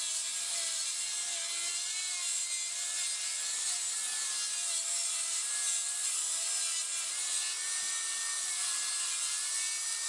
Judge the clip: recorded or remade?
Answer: recorded